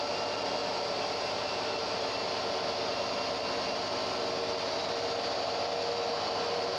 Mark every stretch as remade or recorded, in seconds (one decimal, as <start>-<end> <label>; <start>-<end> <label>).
0.0-0.6 recorded; 0.6-2.0 remade; 2.0-6.8 recorded